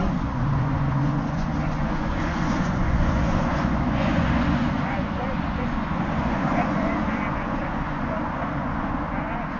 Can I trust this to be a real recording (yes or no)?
no